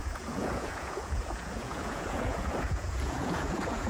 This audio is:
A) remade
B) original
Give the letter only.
A